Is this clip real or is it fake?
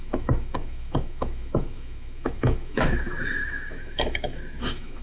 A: fake